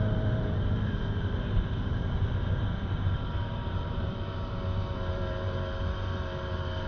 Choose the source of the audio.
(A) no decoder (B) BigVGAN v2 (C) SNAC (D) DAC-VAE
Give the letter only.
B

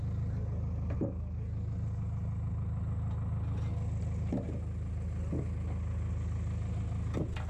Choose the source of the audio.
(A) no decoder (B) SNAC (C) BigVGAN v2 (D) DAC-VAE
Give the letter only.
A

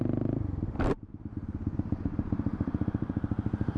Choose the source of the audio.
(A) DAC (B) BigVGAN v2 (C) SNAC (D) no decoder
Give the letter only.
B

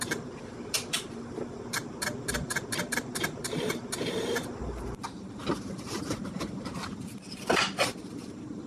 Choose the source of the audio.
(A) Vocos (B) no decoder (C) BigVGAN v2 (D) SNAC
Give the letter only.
C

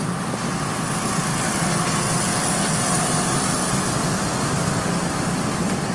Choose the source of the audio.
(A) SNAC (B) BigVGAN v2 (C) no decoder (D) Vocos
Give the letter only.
C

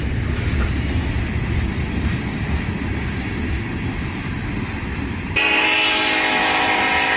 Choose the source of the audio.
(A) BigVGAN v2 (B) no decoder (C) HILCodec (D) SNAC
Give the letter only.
B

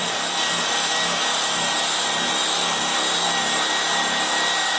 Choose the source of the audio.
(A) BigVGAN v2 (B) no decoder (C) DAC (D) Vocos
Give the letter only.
A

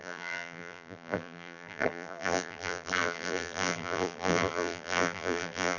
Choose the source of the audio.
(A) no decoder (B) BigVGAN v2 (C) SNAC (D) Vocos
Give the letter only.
B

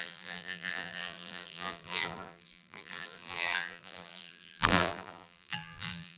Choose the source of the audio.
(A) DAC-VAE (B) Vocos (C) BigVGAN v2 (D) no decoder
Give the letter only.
C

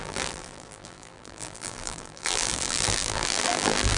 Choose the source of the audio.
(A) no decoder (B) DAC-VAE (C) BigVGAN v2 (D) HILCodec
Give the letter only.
C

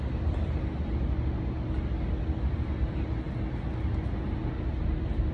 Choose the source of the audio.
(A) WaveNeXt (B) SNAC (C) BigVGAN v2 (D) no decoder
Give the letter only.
D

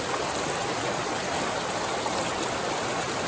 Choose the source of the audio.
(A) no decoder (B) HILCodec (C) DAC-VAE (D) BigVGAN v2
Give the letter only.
A